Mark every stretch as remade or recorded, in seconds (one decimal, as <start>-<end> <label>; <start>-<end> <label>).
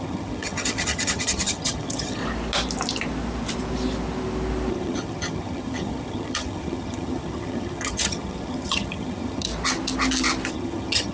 0.0-2.2 remade; 2.2-4.7 recorded; 4.7-9.5 remade; 9.5-10.5 recorded; 10.5-11.1 remade